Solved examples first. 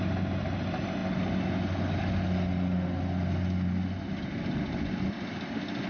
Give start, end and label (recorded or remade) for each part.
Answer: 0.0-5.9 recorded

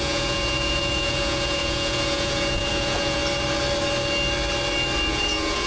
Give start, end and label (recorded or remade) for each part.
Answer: 0.0-3.2 remade; 3.2-5.1 recorded; 5.1-5.7 remade

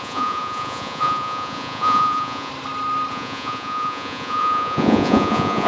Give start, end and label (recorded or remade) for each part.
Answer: 0.0-2.5 remade; 2.5-3.1 recorded; 3.1-5.7 remade

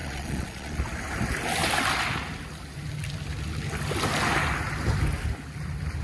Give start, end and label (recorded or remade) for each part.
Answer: 0.0-0.8 remade; 0.8-6.0 recorded

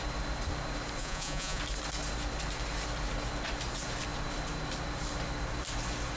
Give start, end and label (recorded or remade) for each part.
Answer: 0.0-1.0 recorded; 1.0-1.6 remade; 1.6-6.2 recorded

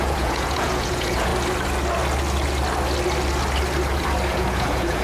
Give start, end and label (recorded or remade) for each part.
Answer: 0.0-1.3 remade; 1.3-4.3 recorded; 4.3-5.0 remade

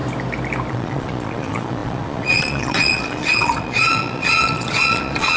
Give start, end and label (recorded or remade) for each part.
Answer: 0.0-0.7 recorded; 0.7-5.4 remade

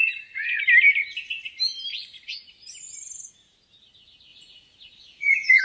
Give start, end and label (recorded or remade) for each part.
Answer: 0.0-0.6 remade; 0.6-1.9 recorded; 1.9-2.5 remade; 2.5-4.3 recorded; 4.3-5.6 remade